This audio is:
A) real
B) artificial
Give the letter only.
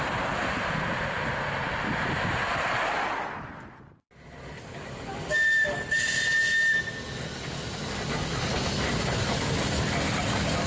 A